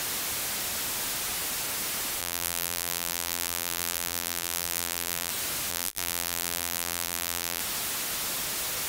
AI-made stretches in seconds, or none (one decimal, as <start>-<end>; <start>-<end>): 2.2-5.3; 5.7-7.6